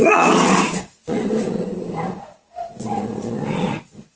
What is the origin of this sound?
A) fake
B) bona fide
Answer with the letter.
A